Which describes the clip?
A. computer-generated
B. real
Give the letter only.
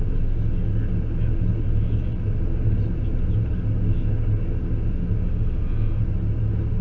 B